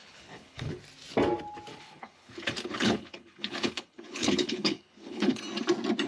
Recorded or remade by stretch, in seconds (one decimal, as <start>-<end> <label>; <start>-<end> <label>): 0.0-0.8 remade; 0.8-1.7 recorded; 1.7-5.4 remade; 5.4-6.1 recorded